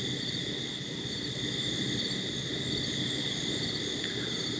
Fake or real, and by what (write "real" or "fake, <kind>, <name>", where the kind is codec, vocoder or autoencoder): real